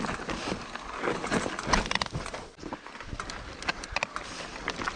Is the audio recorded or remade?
recorded